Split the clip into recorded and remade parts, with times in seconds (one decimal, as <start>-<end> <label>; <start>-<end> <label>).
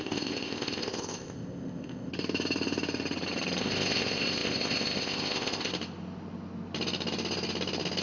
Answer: 0.0-2.1 remade; 2.1-3.6 recorded; 3.6-5.7 remade; 5.7-8.0 recorded